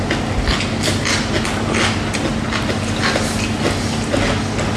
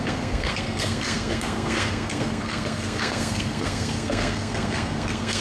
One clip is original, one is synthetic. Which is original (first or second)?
first